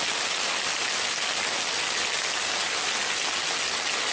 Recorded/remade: recorded